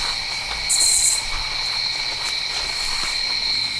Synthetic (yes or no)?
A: no